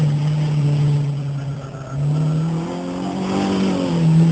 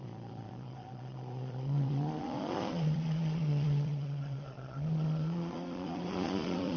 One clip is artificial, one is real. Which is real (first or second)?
first